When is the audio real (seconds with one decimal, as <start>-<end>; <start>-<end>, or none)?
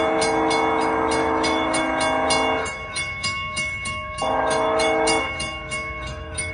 0.0-1.2; 1.8-2.6